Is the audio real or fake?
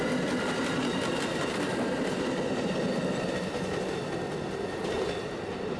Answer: real